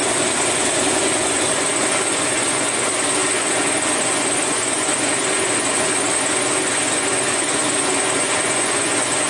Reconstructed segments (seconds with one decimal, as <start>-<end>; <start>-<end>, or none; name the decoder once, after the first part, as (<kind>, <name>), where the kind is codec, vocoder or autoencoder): 0.0-9.3 (vocoder, Vocos)